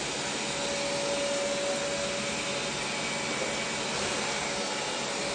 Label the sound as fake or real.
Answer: real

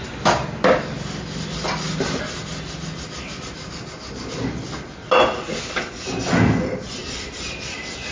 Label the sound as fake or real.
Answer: real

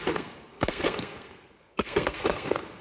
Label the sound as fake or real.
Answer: fake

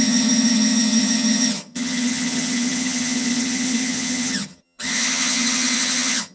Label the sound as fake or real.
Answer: fake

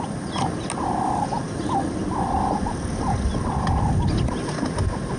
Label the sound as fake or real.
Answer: real